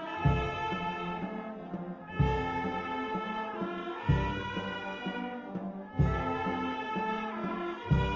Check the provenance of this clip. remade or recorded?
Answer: recorded